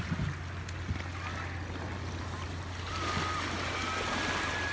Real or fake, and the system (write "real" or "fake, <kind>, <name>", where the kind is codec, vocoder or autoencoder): real